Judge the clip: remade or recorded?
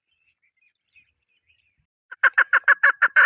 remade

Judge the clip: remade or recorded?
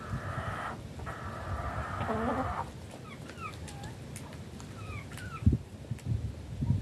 recorded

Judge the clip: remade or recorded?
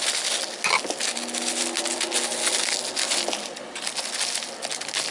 recorded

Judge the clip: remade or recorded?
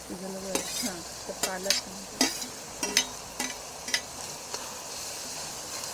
recorded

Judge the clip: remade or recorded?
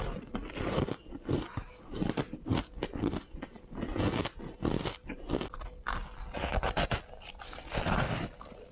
recorded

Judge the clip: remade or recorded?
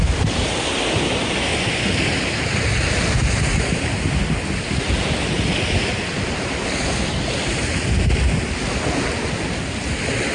recorded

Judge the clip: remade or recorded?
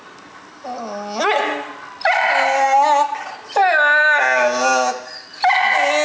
recorded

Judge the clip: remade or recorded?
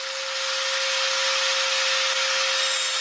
recorded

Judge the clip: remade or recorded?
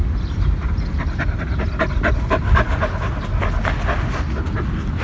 recorded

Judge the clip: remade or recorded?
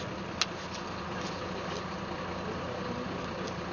recorded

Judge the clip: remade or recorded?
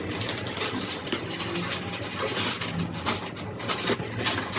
recorded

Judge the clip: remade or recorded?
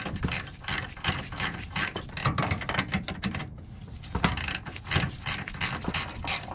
recorded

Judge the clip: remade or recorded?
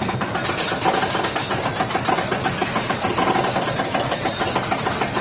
recorded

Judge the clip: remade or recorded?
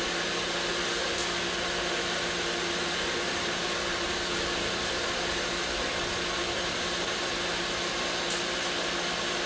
recorded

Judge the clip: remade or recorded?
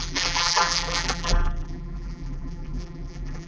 remade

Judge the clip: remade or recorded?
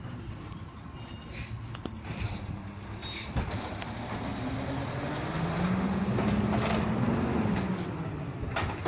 recorded